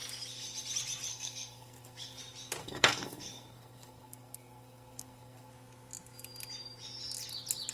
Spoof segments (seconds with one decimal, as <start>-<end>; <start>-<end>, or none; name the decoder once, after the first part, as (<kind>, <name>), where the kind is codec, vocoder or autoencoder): 1.1-2.2 (codec, SNAC); 2.6-5.5